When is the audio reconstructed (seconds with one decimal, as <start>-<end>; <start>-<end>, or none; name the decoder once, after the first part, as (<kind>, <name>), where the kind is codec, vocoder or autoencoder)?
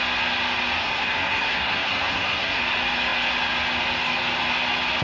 0.8-2.6 (codec, SNAC)